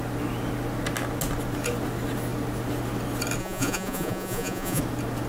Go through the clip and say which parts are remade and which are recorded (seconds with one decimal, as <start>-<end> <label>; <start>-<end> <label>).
0.0-3.4 recorded; 3.4-4.8 remade; 4.8-5.3 recorded